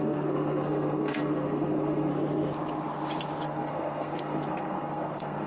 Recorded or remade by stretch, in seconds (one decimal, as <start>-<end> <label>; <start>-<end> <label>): 0.0-2.1 remade; 2.1-3.4 recorded; 3.4-5.5 remade